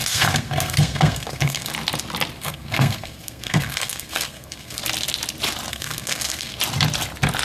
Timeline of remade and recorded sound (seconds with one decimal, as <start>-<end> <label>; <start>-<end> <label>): 0.0-1.7 remade; 1.7-2.4 recorded; 2.4-4.8 remade; 4.8-5.7 recorded; 5.7-6.6 remade; 6.6-7.4 recorded